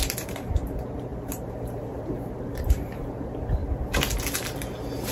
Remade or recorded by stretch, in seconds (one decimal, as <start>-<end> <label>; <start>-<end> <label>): 0.0-3.6 remade; 3.6-5.1 recorded